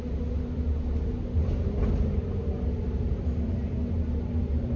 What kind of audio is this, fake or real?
real